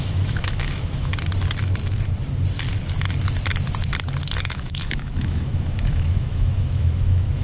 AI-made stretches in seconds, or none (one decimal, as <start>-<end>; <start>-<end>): 0.0-1.1; 4.4-7.4